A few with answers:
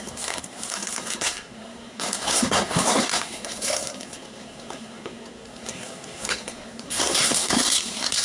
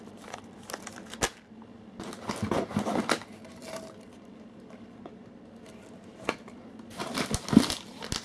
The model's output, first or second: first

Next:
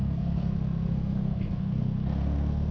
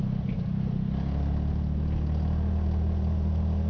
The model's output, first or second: first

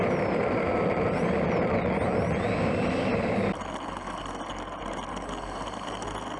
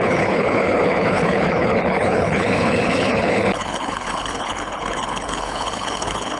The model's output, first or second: second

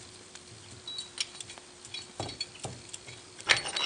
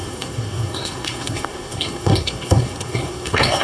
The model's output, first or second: second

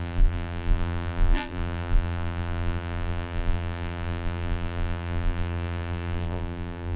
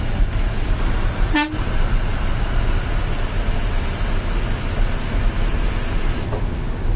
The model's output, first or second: first